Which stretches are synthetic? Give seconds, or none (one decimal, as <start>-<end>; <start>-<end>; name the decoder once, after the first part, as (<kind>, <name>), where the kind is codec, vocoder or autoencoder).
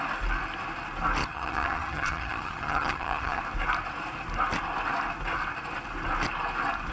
1.2-3.4 (vocoder, HiFi-GAN)